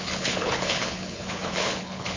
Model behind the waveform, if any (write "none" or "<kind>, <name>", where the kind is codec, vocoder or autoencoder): codec, HILCodec